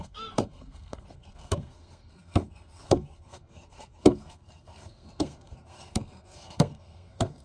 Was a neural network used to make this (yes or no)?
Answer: yes